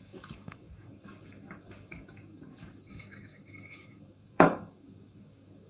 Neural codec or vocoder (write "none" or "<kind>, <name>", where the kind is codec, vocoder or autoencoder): codec, DAC